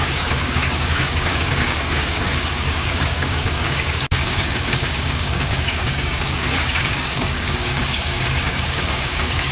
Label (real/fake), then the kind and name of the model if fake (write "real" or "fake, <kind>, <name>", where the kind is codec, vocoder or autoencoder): fake, codec, DAC